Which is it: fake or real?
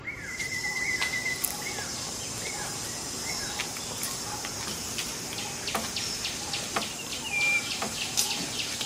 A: real